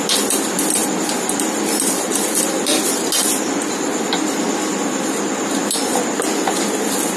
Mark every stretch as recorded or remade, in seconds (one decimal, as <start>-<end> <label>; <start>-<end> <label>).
0.0-0.8 recorded; 0.8-3.1 remade; 3.1-7.2 recorded